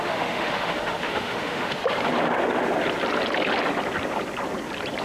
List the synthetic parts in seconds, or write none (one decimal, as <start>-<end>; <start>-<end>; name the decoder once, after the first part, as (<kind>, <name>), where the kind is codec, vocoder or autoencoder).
0.0-1.8 (autoencoder, DAC-VAE)